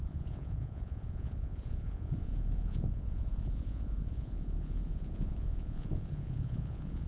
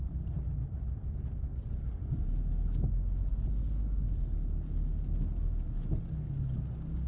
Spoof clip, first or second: first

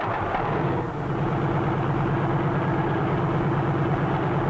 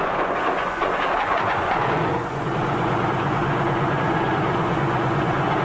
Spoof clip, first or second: second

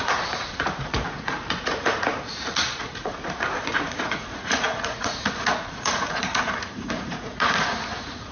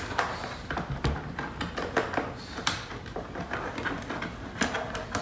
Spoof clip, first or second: first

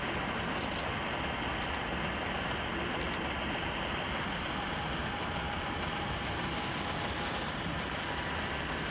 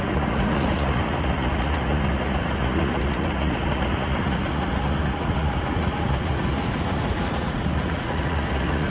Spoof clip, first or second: second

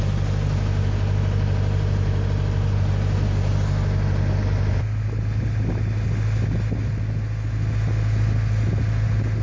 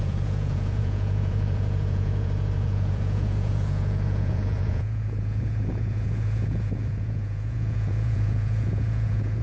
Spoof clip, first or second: second